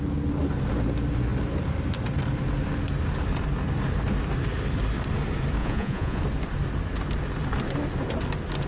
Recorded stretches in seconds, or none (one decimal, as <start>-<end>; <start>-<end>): 0.0-5.6; 6.2-8.7